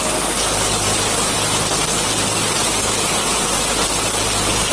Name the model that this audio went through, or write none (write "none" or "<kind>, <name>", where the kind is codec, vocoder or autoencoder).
none